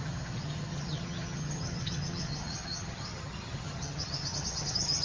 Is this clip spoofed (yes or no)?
yes